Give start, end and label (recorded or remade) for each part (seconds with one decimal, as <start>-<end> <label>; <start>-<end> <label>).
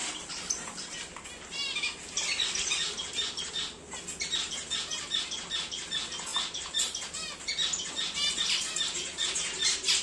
0.0-3.5 remade; 3.5-10.0 recorded